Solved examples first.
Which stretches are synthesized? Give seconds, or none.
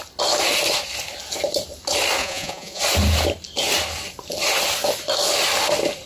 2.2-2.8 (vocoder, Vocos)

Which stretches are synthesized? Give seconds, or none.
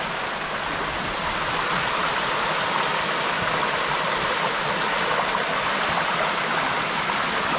none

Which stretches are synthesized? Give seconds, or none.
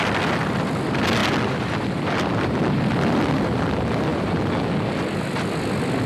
0.0-6.1 (vocoder, BigVGAN v2)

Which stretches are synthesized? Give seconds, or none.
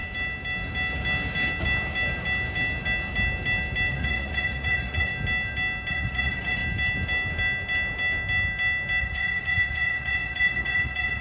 3.9-5.1 (vocoder, Vocos); 5.9-6.6; 9.0-11.2